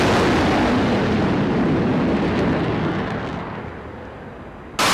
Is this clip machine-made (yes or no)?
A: no